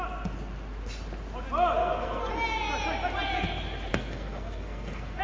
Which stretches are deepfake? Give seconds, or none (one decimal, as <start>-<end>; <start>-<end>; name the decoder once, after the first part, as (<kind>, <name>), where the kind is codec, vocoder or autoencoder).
1.8-2.3 (codec, SNAC); 3.9-5.2